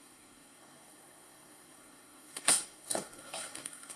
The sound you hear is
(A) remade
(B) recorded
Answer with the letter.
A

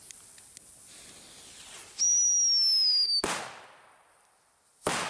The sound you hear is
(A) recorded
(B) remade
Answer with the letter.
A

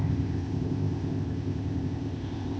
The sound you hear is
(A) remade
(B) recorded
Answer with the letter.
A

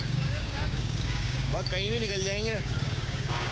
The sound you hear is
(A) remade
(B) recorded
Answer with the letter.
A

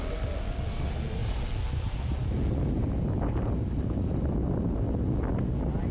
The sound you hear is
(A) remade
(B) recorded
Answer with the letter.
B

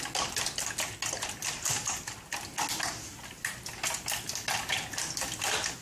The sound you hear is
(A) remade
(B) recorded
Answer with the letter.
B